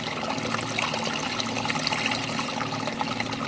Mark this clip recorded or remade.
recorded